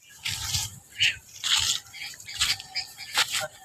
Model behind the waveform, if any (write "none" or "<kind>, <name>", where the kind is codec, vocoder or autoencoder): none